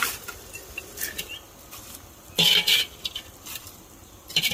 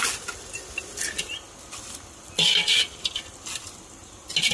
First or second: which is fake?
first